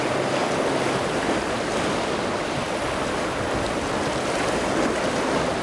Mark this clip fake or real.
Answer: real